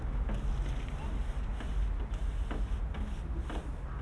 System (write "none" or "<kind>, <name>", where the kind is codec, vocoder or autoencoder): none